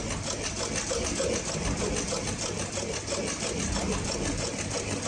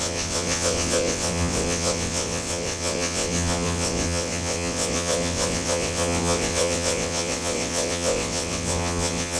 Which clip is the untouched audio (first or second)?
first